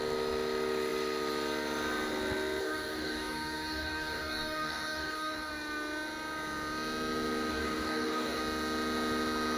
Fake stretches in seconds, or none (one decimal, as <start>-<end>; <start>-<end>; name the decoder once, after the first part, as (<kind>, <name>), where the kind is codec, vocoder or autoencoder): 2.6-5.5 (codec, DAC); 7.5-8.4